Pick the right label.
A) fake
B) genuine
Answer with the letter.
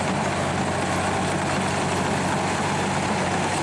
B